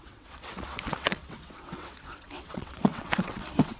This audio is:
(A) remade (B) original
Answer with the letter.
A